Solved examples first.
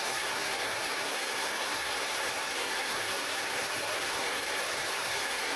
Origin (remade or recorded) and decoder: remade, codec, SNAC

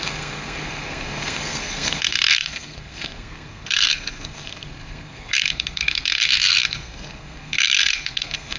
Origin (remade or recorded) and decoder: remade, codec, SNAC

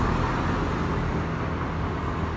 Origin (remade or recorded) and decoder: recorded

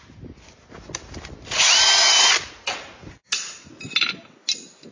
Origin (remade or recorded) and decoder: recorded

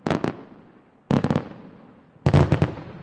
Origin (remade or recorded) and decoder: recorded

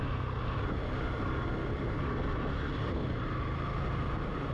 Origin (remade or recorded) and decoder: recorded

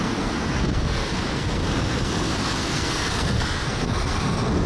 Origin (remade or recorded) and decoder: remade, codec, SNAC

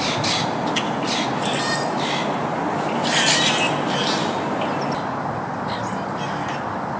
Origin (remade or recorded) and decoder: recorded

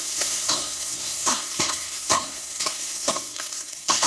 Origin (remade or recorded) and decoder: remade, codec, SNAC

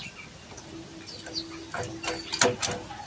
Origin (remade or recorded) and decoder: recorded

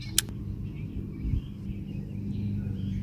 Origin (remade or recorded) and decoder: recorded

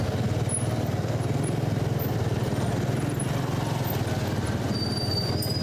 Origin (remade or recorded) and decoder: recorded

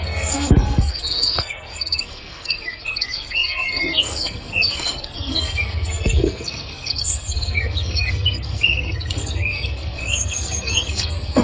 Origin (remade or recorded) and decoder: remade, codec, SNAC